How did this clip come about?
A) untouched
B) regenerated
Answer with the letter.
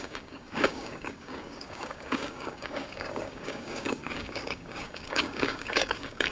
B